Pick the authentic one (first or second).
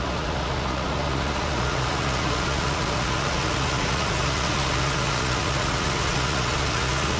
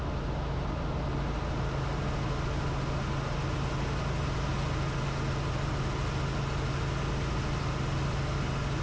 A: second